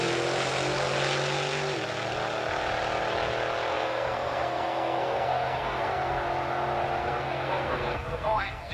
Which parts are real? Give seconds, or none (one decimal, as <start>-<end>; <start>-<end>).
0.0-3.7; 6.2-7.0